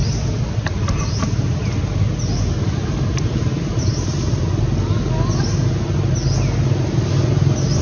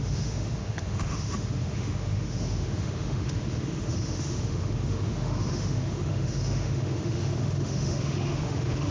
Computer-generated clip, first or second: second